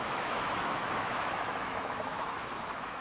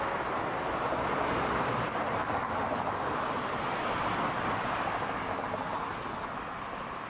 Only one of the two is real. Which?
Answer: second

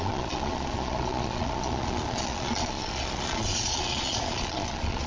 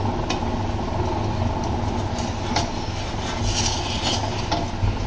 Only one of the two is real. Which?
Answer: second